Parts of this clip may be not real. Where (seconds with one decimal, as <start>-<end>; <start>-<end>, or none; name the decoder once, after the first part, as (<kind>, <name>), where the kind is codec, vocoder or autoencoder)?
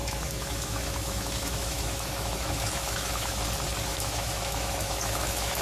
0.0-3.4 (autoencoder, DAC-VAE); 3.9-5.6